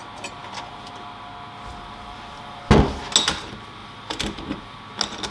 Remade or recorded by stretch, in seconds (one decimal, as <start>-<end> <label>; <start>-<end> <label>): 0.0-0.4 recorded; 0.4-0.9 remade; 0.9-1.7 recorded; 1.7-2.6 remade; 2.6-3.8 recorded; 3.8-4.8 remade; 4.8-5.3 recorded